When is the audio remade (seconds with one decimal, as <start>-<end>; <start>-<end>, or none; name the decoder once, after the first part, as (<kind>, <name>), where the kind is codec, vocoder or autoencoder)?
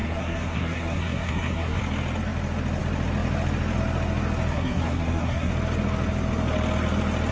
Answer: 0.0-1.8 (codec, SNAC); 4.5-5.5